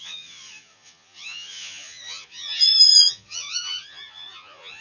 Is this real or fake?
fake